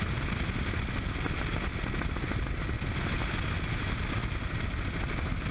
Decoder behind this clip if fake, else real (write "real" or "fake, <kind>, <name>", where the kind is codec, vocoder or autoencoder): real